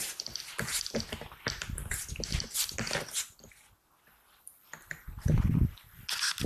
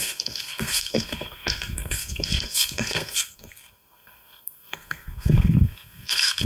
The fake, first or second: second